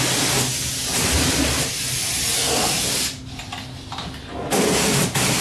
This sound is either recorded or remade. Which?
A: recorded